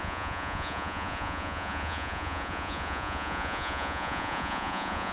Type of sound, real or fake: fake